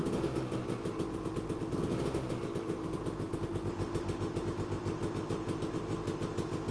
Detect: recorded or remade recorded